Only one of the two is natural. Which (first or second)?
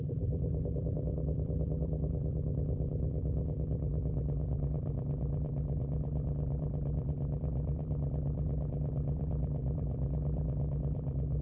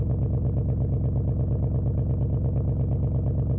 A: second